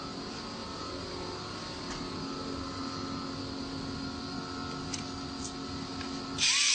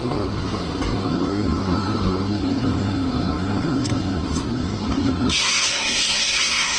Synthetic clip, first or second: second